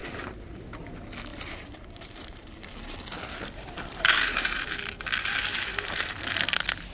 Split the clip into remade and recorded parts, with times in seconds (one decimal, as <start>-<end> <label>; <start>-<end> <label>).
0.0-0.6 remade; 0.6-1.3 recorded; 1.3-4.7 remade; 4.7-5.7 recorded; 5.7-6.2 remade; 6.2-6.9 recorded